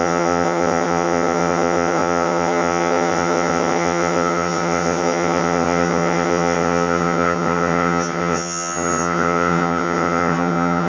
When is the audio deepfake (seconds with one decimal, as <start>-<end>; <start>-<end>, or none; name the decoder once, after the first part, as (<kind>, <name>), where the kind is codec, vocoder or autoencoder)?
0.0-10.9 (vocoder, HiFi-GAN)